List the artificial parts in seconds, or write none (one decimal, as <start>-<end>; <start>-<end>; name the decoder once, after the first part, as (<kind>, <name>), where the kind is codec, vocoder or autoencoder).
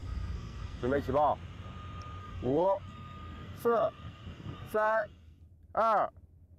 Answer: 0.0-1.1 (codec, SNAC); 2.2-5.4